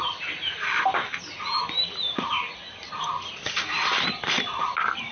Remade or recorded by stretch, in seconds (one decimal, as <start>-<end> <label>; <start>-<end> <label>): 0.0-5.1 recorded